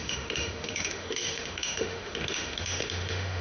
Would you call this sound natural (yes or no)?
no